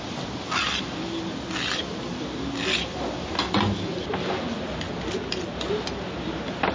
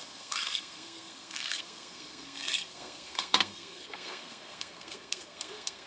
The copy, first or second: second